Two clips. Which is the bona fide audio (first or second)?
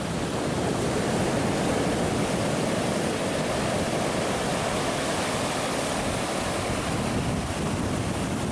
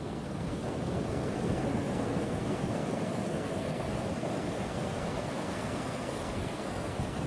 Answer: first